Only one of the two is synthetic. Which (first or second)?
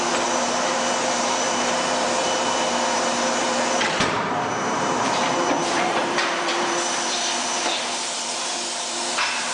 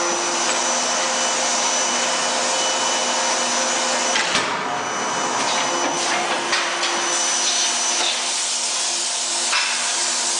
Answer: first